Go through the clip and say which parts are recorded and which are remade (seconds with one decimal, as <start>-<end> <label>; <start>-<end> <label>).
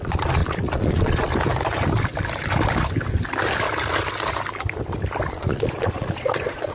0.0-1.3 remade; 1.3-5.3 recorded; 5.3-6.7 remade